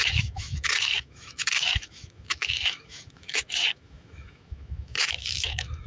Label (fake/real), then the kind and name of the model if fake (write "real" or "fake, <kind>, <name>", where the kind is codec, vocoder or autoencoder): fake, autoencoder, DAC-VAE